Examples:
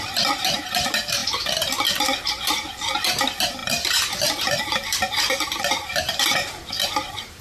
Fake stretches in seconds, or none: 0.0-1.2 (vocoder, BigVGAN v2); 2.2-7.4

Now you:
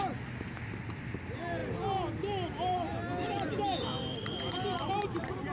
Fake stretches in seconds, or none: none

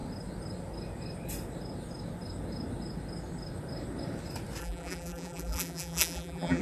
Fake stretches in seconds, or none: 4.6-6.6 (vocoder, BigVGAN v2)

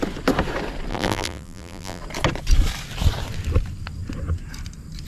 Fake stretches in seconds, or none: 0.9-2.0 (vocoder, BigVGAN v2)

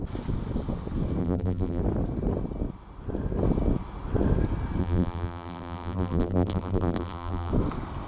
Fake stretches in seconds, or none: 1.2-1.8 (vocoder, BigVGAN v2); 4.8-7.5

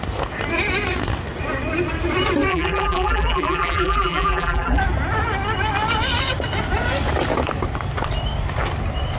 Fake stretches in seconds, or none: 2.5-4.8 (vocoder, BigVGAN v2)